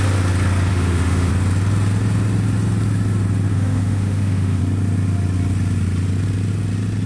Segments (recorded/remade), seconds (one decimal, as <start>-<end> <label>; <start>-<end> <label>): 0.0-0.7 recorded; 0.7-1.3 remade; 1.3-3.5 recorded; 3.5-4.6 remade; 4.6-7.1 recorded